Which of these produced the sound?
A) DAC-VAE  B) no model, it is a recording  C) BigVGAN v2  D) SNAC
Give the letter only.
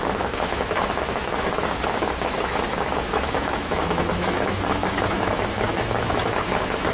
A